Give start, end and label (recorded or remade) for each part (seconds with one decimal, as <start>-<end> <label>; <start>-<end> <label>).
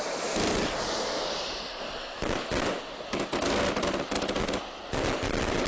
0.0-2.0 recorded; 2.0-2.5 remade; 2.5-5.7 recorded